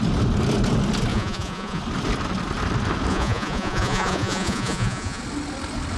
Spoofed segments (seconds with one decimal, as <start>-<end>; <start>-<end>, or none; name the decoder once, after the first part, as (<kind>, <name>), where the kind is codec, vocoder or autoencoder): 1.1-1.8 (vocoder, Vocos); 3.1-5.2